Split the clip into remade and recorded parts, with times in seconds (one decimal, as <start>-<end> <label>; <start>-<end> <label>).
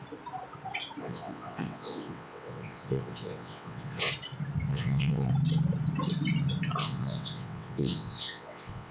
0.0-1.0 recorded; 1.0-4.1 remade; 4.1-4.7 recorded; 4.7-5.3 remade; 5.3-6.8 recorded; 6.8-8.9 remade